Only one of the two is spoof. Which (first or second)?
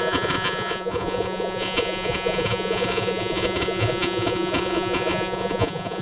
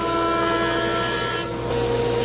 first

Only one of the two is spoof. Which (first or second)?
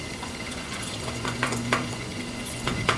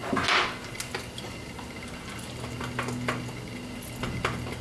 first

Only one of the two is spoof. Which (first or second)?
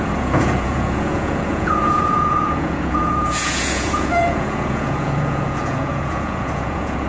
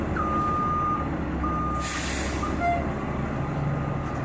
first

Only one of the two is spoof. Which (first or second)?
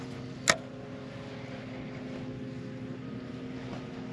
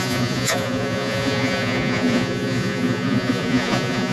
second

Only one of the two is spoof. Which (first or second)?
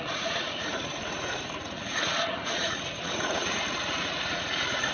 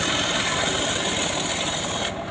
first